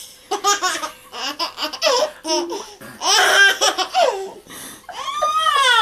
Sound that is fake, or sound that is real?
real